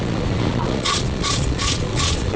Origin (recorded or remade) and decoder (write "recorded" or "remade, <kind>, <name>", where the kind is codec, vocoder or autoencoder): remade, vocoder, Vocos